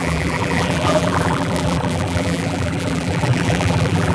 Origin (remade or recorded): remade